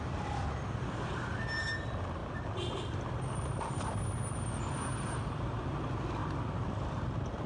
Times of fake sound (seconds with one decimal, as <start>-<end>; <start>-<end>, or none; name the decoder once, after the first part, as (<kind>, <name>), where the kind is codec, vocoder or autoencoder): none